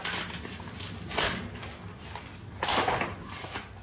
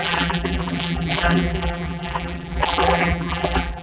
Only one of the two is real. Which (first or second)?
first